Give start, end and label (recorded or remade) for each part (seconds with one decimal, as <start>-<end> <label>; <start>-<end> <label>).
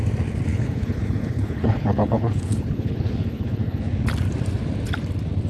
0.0-0.5 recorded; 0.5-3.8 remade; 3.8-5.5 recorded